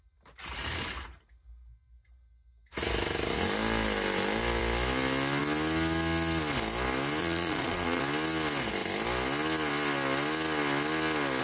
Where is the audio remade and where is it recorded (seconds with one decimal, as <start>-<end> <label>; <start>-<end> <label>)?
0.0-7.2 recorded; 7.2-8.0 remade; 8.0-11.4 recorded